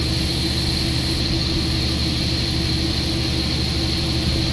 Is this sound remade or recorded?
recorded